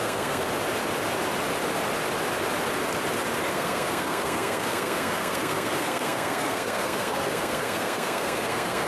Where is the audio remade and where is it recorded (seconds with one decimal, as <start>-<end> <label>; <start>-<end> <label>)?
0.0-0.4 remade; 0.4-3.5 recorded; 3.5-8.9 remade